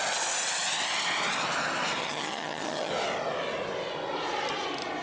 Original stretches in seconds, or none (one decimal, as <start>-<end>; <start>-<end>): 0.0-2.0; 2.9-5.0

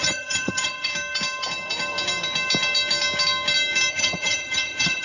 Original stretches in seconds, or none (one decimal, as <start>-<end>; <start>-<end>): 0.9-3.9

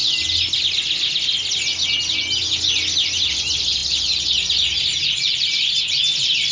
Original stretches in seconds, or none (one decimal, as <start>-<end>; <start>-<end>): 0.0-6.5

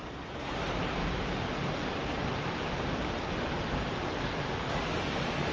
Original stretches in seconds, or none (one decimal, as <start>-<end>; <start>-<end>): 0.0-5.5

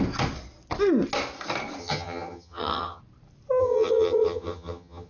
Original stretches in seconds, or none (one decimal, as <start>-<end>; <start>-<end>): 0.0-1.8; 3.0-3.6

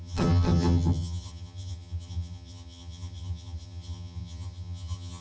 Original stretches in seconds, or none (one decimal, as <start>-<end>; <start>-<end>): none